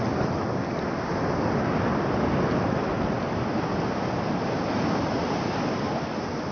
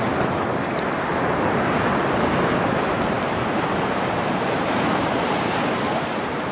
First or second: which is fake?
second